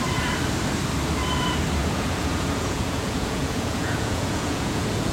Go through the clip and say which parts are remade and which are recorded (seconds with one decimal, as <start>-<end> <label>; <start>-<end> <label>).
0.0-1.8 recorded; 1.8-5.1 remade